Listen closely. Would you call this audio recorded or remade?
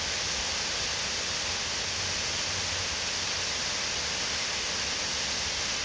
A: recorded